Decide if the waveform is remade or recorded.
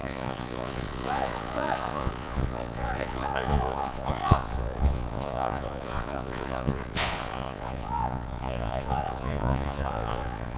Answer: remade